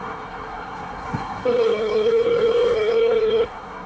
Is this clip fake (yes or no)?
yes